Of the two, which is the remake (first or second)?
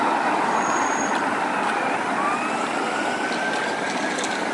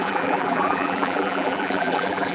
second